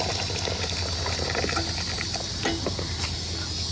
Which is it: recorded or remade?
recorded